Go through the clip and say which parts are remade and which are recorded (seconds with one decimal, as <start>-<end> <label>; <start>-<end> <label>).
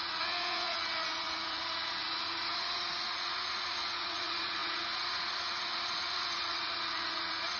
0.0-7.6 remade